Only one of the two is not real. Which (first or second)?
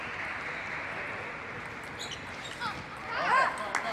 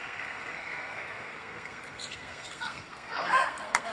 second